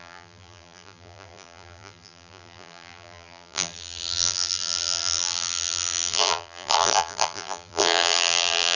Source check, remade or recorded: remade